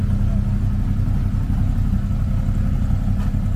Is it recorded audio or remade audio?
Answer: recorded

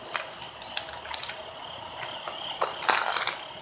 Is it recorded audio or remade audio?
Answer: recorded